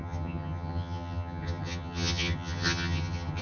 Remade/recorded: remade